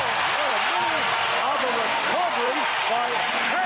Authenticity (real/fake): fake